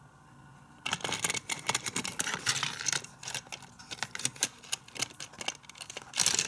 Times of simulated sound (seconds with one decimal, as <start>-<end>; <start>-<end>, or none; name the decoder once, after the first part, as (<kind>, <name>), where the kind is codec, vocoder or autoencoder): none